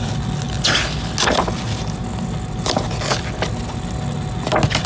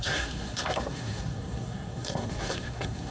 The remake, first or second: second